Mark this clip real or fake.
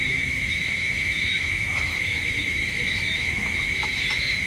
fake